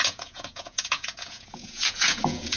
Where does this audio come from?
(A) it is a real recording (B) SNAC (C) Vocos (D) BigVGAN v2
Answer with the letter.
C